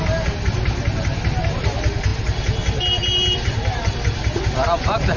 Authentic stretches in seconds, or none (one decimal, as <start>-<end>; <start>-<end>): 0.0-5.2